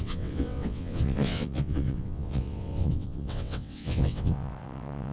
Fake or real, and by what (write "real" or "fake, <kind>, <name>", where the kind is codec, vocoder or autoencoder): fake, vocoder, WaveNeXt